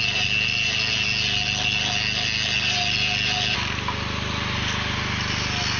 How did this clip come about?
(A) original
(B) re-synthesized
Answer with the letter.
A